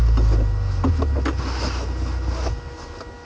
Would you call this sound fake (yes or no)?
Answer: no